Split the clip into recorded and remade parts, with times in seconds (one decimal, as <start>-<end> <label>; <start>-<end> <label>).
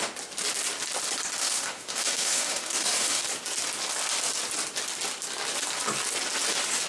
0.0-1.4 recorded; 1.4-3.2 remade; 3.2-6.9 recorded